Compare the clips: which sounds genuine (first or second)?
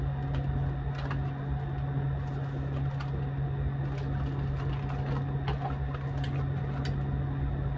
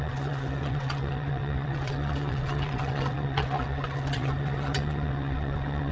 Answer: first